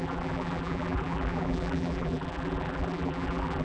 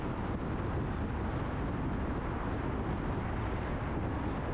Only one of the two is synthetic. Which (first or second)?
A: first